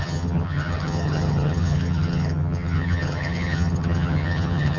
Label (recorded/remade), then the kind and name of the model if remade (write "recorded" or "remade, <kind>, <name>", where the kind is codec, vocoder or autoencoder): remade, vocoder, HiFi-GAN